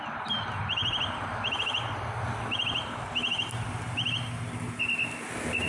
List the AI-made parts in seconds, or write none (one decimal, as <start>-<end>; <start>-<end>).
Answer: none